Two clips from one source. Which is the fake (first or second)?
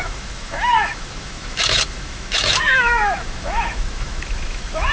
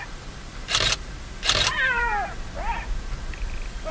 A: first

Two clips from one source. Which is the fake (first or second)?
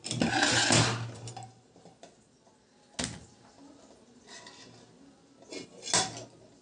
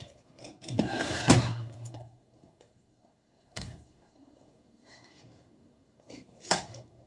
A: second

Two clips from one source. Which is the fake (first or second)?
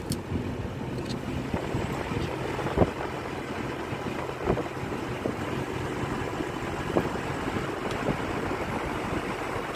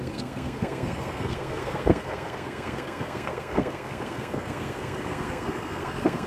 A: second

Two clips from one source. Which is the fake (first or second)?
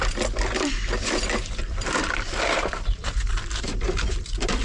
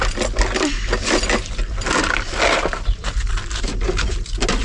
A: first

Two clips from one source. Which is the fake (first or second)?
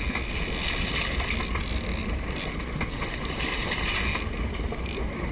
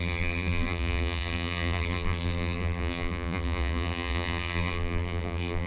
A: second